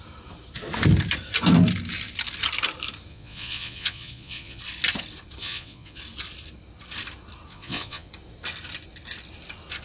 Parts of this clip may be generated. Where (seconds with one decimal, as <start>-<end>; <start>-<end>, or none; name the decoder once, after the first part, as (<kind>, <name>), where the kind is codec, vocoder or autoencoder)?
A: 3.1-4.6 (vocoder, Vocos); 5.4-6.0; 7.5-8.1